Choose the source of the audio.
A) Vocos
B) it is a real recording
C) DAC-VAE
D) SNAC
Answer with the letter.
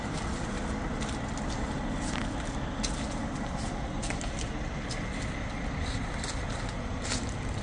B